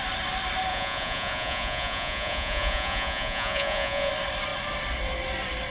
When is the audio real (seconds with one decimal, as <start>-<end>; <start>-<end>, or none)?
0.0-0.7; 4.1-5.7